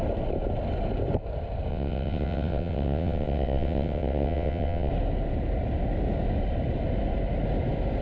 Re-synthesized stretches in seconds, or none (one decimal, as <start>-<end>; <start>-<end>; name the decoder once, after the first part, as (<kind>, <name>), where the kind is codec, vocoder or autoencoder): 1.7-4.9 (vocoder, WaveNeXt)